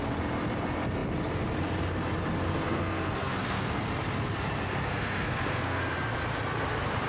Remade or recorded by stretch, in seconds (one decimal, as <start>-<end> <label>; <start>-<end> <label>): 0.0-2.5 recorded; 2.5-3.8 remade; 3.8-4.9 recorded; 4.9-5.8 remade; 5.8-7.1 recorded